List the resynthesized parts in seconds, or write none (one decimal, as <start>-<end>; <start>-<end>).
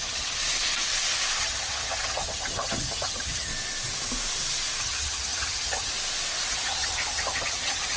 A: 0.0-0.4; 1.4-3.5; 4.8-5.9; 6.5-8.0